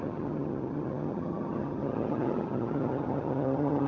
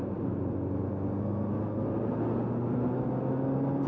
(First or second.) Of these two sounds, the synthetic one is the first